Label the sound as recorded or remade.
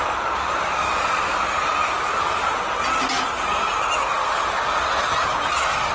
recorded